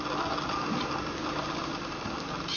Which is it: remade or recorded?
recorded